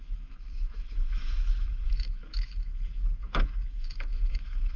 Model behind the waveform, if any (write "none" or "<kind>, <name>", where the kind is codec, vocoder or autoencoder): autoencoder, DAC-VAE